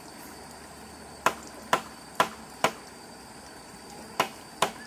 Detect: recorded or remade remade